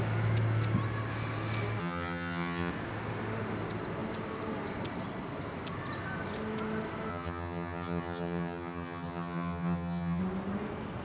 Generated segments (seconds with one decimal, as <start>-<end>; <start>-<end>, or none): 1.8-2.7; 7.1-10.2